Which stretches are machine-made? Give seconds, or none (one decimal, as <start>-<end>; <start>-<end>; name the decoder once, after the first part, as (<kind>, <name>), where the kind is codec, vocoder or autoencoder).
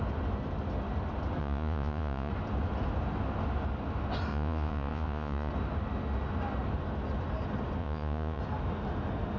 1.4-2.3 (vocoder, Vocos); 4.3-5.5; 7.8-8.4